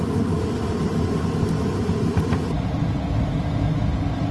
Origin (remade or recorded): recorded